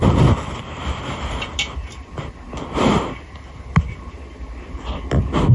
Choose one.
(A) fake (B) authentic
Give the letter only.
B